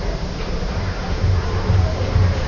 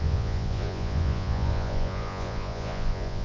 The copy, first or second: second